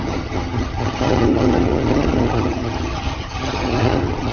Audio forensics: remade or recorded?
remade